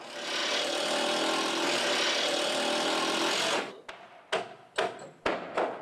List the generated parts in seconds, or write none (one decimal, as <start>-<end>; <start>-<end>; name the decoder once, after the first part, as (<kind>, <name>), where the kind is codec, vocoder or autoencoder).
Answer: none